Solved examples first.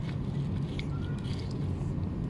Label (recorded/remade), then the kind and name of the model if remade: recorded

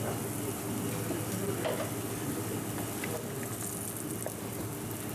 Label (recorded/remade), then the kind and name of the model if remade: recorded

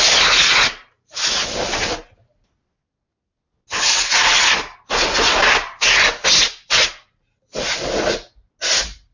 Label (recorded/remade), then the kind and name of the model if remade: recorded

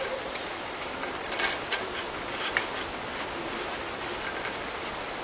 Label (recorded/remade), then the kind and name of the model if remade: recorded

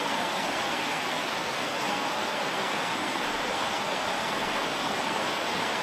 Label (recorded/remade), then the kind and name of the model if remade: remade, codec, SNAC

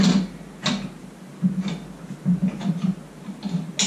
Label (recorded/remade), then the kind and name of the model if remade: recorded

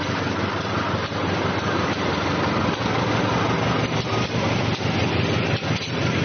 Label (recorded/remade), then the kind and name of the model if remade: recorded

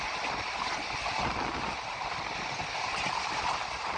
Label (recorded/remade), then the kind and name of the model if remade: recorded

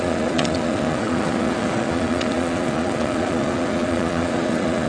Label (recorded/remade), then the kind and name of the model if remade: remade, vocoder, Vocos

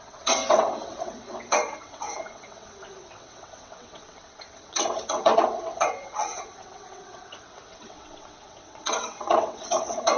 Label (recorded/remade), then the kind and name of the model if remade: remade, vocoder, WaveNeXt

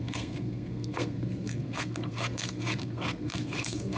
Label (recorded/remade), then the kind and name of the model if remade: remade, codec, SNAC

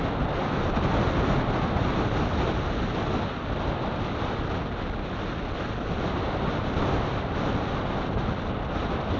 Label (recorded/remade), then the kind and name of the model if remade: recorded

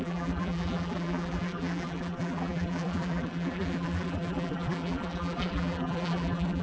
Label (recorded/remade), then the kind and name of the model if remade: remade, vocoder, BigVGAN v2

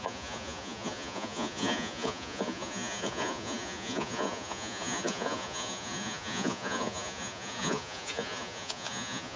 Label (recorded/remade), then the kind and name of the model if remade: remade, vocoder, Vocos